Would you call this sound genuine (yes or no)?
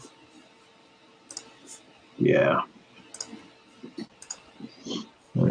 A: yes